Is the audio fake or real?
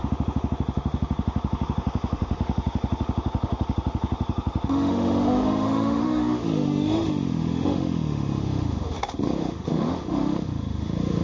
fake